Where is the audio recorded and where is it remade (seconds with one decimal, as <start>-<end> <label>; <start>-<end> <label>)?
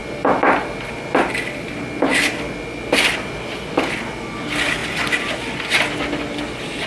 0.0-6.9 recorded